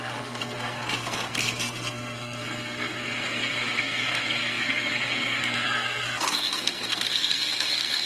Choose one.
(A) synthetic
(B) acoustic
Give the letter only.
A